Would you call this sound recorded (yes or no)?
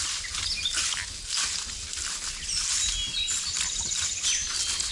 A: yes